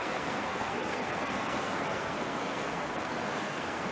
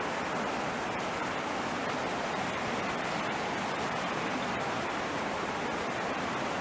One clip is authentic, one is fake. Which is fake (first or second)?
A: first